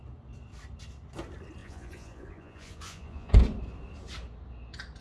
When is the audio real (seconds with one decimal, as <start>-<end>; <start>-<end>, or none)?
0.0-1.6; 3.3-5.0